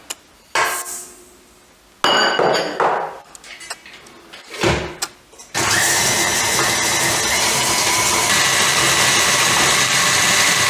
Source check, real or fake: real